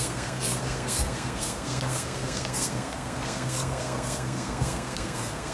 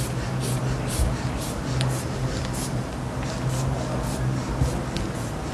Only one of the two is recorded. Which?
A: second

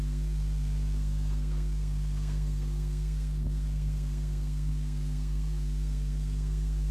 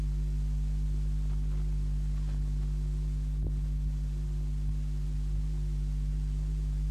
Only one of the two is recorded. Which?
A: second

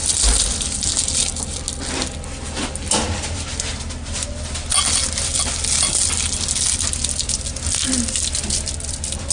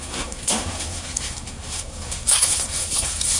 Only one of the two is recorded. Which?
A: first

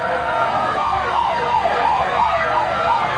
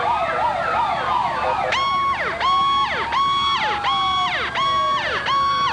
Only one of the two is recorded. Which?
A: second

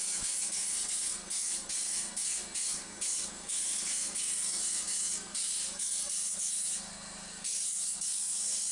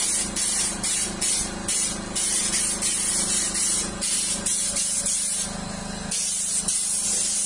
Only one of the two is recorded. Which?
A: second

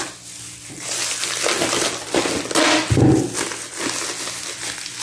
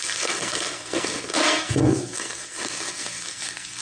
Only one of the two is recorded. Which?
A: first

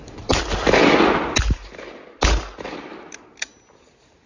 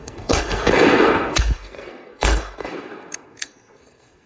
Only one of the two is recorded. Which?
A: first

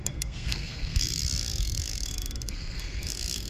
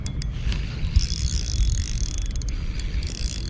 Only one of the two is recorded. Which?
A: second